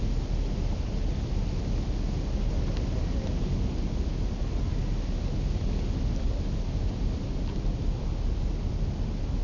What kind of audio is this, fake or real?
real